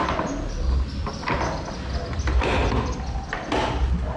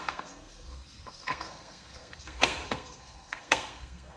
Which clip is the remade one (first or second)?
second